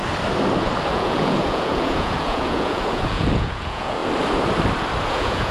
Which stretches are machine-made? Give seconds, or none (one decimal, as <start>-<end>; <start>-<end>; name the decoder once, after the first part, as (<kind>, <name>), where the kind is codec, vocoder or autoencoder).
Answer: 0.9-4.0 (vocoder, Vocos); 5.1-5.5